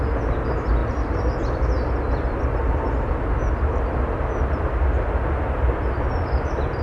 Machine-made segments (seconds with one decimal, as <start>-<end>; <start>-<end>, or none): none